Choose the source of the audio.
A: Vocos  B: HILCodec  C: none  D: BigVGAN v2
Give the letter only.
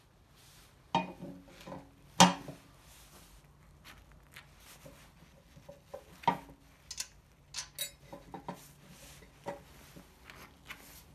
C